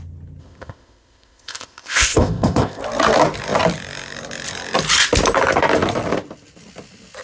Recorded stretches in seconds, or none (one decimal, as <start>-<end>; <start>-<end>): 0.0-0.4; 2.8-7.2